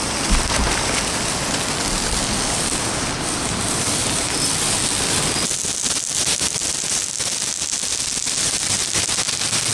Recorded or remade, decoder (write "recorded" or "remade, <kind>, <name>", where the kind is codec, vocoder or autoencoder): recorded